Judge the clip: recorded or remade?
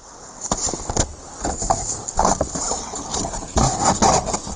recorded